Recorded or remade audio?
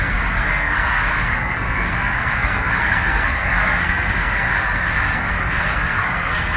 remade